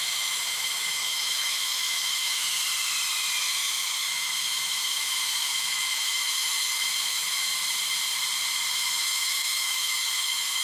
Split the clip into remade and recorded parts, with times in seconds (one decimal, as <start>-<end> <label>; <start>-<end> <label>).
0.0-2.6 remade; 2.6-3.4 recorded; 3.4-7.5 remade; 7.5-8.7 recorded; 8.7-10.6 remade